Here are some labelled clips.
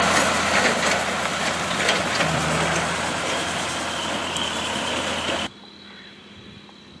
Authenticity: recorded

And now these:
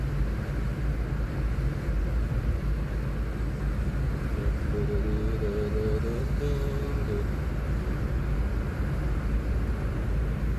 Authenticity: recorded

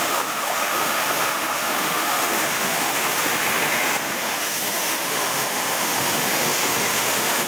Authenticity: remade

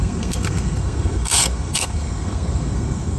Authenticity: remade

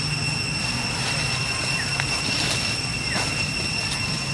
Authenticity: recorded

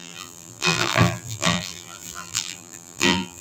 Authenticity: remade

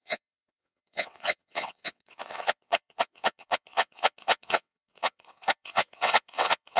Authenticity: remade